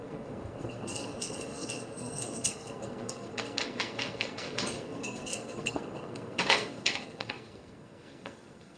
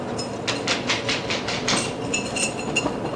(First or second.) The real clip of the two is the second